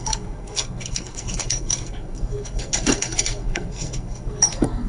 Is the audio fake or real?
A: fake